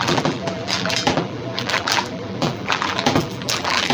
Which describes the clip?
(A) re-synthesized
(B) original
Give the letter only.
A